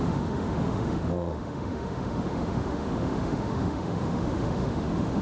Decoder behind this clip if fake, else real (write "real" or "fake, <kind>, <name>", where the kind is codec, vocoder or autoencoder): fake, autoencoder, DAC-VAE